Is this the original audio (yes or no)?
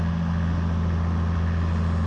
yes